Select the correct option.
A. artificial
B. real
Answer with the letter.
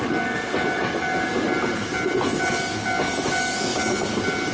B